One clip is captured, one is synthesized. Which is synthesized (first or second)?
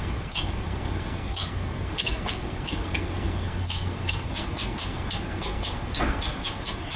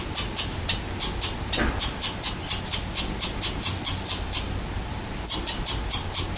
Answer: first